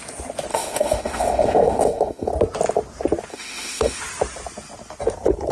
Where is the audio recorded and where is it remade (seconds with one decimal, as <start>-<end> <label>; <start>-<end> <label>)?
0.0-0.5 recorded; 0.5-2.3 remade; 2.3-3.3 recorded; 3.3-4.0 remade; 4.0-5.5 recorded